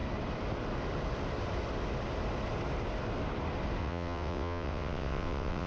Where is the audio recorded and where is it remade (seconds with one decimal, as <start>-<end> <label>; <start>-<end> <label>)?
0.0-3.8 recorded; 3.8-5.7 remade